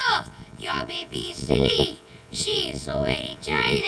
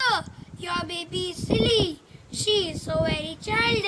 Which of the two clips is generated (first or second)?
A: first